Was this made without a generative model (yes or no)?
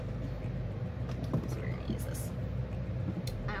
yes